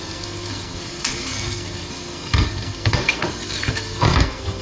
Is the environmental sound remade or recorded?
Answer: remade